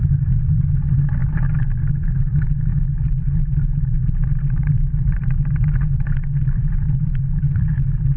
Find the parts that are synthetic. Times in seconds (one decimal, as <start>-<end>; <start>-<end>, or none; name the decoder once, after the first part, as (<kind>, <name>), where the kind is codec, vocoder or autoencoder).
4.9-8.2 (vocoder, BigVGAN v2)